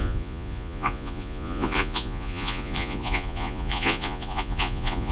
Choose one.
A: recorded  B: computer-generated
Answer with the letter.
B